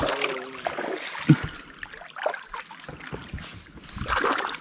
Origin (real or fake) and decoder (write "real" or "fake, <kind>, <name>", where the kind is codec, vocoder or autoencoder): real